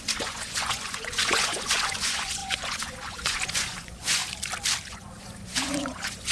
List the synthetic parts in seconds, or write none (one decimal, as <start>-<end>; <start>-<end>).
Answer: 0.0-4.2; 4.9-6.3

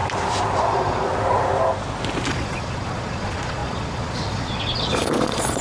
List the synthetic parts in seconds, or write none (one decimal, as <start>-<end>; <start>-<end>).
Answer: 0.6-1.1; 2.3-5.6

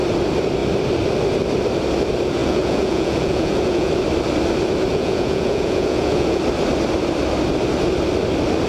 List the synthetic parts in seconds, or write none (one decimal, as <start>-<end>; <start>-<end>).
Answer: 2.4-3.9; 4.9-6.4

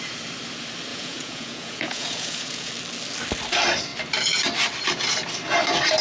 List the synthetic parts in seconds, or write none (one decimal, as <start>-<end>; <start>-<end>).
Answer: 0.9-2.7